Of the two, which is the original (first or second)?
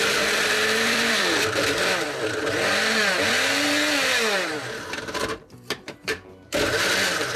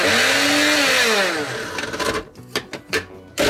second